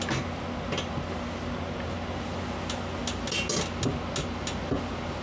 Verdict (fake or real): real